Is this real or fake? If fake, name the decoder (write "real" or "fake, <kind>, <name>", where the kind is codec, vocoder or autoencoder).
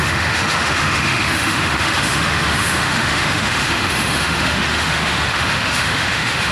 fake, autoencoder, DAC-VAE